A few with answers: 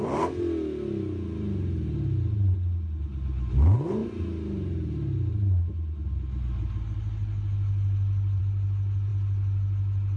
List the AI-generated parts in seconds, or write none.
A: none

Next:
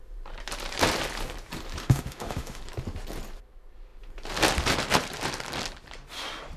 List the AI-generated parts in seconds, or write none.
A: 1.8-2.6 (autoencoder, DAC-VAE)

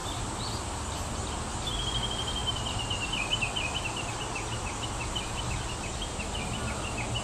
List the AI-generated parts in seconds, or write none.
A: none